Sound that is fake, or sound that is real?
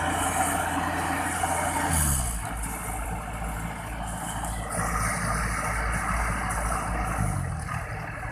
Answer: real